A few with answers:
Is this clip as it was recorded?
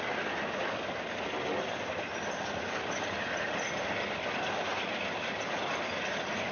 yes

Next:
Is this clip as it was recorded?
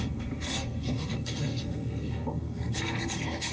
no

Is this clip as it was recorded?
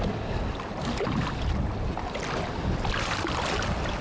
yes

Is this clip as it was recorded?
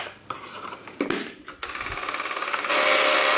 yes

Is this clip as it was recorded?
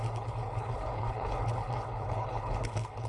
no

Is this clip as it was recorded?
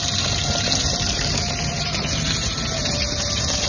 no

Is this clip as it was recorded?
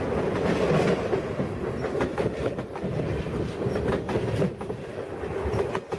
yes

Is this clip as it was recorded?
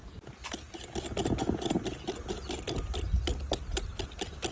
yes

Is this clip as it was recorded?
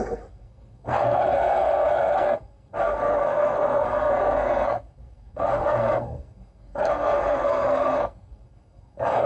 no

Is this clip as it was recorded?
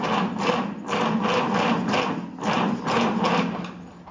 yes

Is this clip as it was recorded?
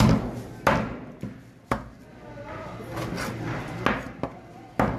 yes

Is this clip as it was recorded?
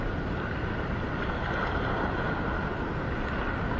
yes